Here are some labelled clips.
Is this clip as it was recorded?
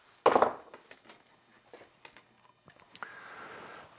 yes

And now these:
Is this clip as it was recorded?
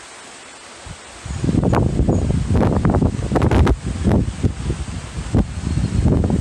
yes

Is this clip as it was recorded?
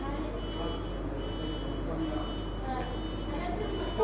yes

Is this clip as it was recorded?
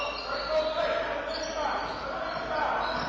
yes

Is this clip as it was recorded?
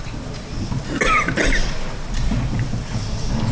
yes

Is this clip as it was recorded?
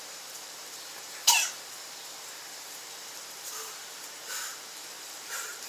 no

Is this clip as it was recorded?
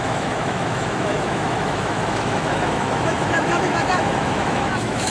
no